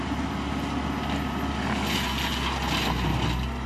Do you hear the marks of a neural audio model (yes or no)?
no